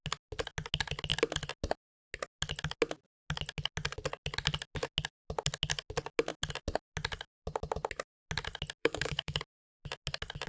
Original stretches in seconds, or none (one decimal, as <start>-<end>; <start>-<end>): 0.0-8.8; 9.4-10.5